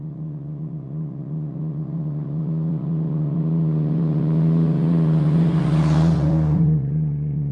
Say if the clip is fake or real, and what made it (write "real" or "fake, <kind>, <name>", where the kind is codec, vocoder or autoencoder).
fake, vocoder, Vocos